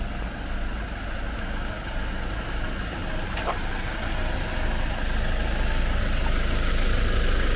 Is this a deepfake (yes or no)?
no